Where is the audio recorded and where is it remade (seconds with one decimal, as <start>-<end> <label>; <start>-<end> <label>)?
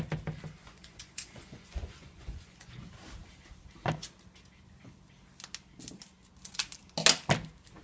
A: 0.0-0.6 recorded; 0.6-2.7 remade; 2.7-7.8 recorded